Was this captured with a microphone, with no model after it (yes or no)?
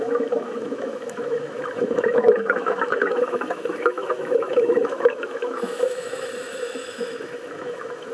no